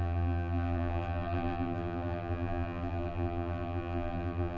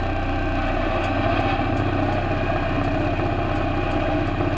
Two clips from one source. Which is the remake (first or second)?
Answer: first